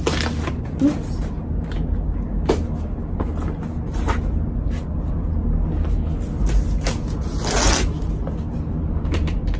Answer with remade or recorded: recorded